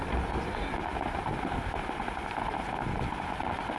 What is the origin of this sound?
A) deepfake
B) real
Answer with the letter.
B